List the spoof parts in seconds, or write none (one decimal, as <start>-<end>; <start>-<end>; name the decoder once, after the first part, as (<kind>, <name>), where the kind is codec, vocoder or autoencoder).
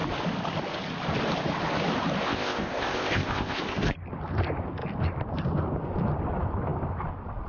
2.2-3.6 (codec, ZipCodec)